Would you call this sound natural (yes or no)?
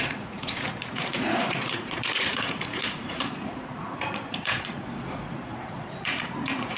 no